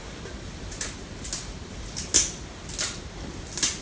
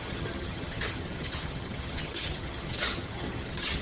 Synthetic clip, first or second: second